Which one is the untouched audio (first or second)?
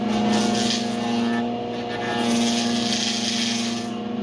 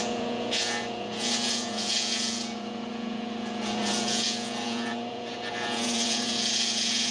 first